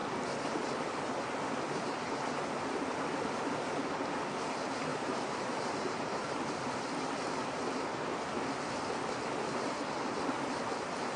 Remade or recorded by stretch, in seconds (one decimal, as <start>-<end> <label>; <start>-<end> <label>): 0.0-4.9 recorded; 4.9-6.4 remade; 6.4-11.2 recorded